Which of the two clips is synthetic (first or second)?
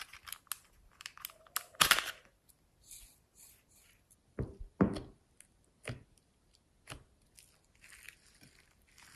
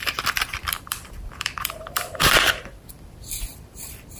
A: second